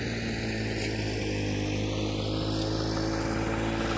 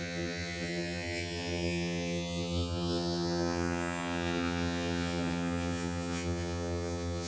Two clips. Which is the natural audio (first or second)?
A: first